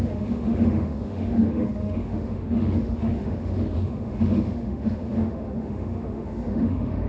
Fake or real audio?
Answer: fake